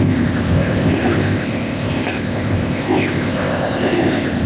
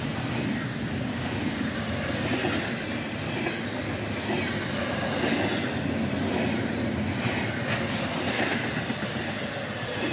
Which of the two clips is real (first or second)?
second